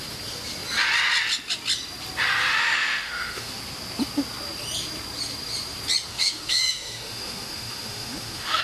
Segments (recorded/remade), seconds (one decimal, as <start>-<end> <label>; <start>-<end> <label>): 0.0-2.6 recorded; 2.6-3.5 remade; 3.5-6.1 recorded; 6.1-8.6 remade